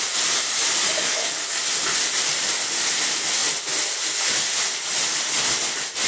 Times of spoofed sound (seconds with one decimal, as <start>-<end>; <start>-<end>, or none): 0.9-1.6